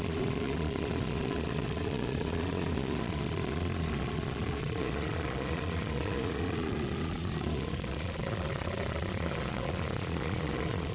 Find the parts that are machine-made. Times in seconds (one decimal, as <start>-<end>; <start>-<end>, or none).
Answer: 0.0-10.9